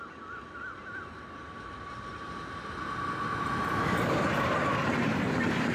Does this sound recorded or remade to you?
recorded